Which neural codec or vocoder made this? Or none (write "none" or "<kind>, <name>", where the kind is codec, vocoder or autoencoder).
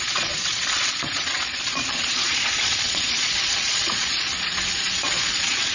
vocoder, Vocos